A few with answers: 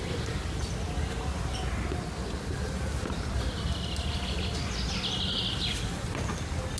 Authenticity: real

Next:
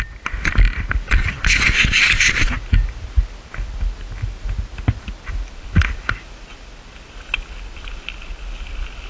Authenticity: real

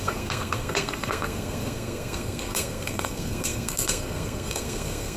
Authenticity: fake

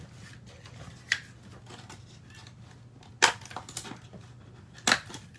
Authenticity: real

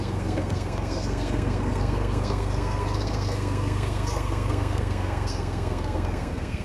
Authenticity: fake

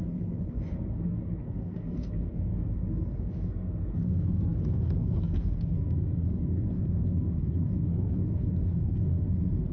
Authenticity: fake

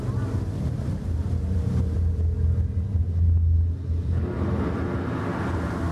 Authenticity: real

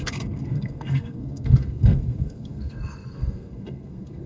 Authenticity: fake